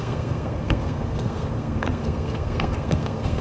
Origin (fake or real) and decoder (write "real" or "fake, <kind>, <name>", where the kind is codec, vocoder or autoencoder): fake, codec, SNAC